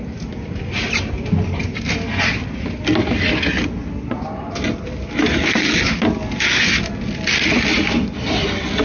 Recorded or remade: recorded